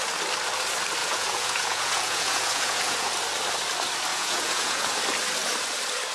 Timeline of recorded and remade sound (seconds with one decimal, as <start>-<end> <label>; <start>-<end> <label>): 0.0-1.0 recorded; 1.0-3.1 remade; 3.1-4.1 recorded; 4.1-4.9 remade; 4.9-6.1 recorded